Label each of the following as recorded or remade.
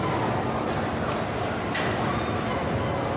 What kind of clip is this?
recorded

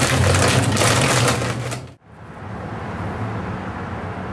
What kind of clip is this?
recorded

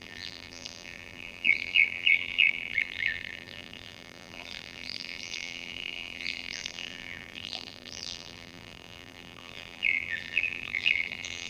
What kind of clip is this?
remade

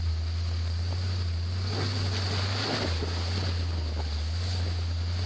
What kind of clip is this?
recorded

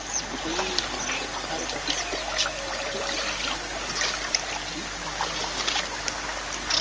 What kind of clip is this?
recorded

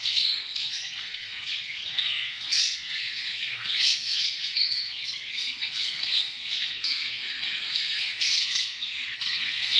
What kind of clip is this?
remade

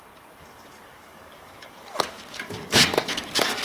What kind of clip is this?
remade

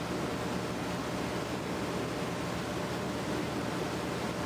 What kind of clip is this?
recorded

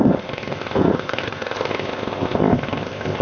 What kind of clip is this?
remade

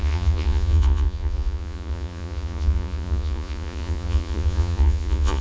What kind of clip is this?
remade